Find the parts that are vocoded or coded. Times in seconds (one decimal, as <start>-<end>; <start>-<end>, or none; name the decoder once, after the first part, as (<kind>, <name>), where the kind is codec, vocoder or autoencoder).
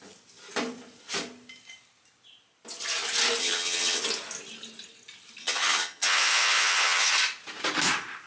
3.4-4.0 (vocoder, HiFi-GAN); 5.4-7.1